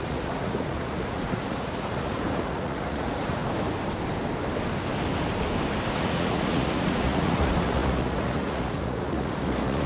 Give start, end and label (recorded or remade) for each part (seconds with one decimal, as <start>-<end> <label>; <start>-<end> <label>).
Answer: 0.0-3.4 remade; 3.4-6.0 recorded; 6.0-9.9 remade